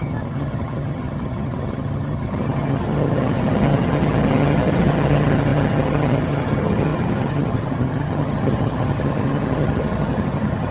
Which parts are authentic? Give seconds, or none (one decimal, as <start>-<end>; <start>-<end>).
none